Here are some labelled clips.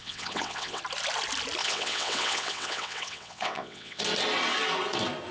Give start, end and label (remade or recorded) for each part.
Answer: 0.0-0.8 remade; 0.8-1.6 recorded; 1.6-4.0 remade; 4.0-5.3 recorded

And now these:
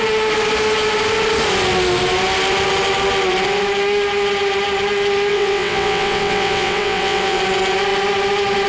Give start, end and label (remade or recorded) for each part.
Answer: 0.0-5.3 recorded; 5.3-7.4 remade; 7.4-8.7 recorded

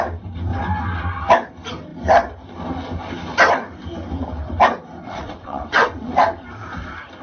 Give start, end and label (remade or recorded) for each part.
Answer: 0.0-5.0 recorded; 5.0-6.1 remade; 6.1-7.2 recorded

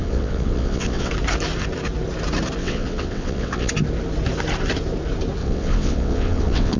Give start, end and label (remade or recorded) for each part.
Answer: 0.0-1.1 remade; 1.1-2.6 recorded; 2.6-3.7 remade; 3.7-5.4 recorded; 5.4-6.8 remade

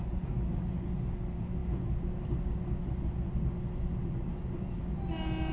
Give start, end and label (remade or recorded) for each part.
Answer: 0.0-5.5 recorded

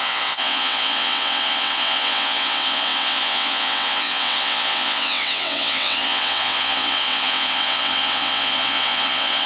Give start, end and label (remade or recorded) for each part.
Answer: 0.0-9.5 remade

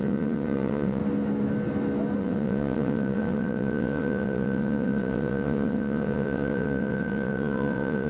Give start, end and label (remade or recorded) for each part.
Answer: 0.0-1.0 remade; 1.0-2.2 recorded; 2.2-8.1 remade